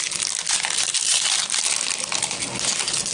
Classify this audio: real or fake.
real